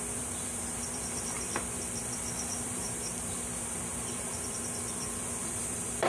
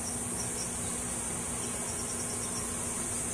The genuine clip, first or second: second